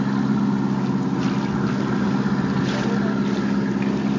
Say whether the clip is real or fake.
real